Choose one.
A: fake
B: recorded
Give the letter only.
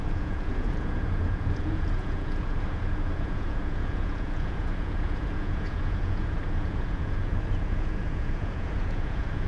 A